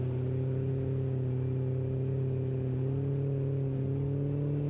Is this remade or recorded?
recorded